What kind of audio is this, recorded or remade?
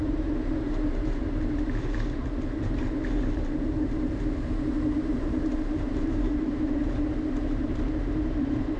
remade